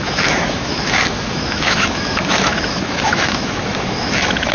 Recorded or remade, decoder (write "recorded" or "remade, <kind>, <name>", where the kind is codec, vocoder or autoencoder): remade, autoencoder, DAC-VAE